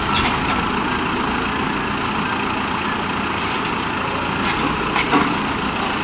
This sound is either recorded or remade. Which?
recorded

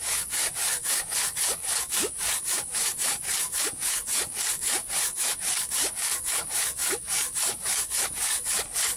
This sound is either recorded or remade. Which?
remade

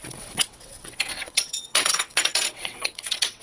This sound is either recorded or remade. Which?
remade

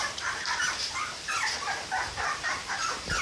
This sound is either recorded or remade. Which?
remade